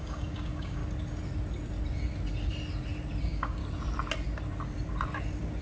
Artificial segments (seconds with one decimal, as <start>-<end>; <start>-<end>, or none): 0.0-0.8; 3.2-3.6